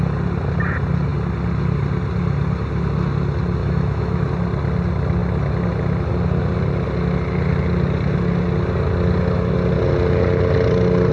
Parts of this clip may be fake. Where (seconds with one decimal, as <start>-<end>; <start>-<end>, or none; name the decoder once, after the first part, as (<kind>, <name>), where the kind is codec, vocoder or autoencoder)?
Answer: 3.6-4.3 (autoencoder, DAC-VAE)